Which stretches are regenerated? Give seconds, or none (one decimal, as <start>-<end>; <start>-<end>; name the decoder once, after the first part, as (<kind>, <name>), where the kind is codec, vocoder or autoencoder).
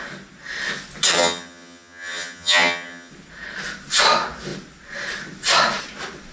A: 1.1-3.1 (vocoder, HiFi-GAN)